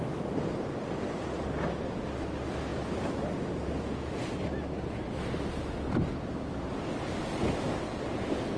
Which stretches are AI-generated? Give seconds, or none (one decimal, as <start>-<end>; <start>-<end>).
none